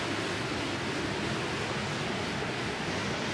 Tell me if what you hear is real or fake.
real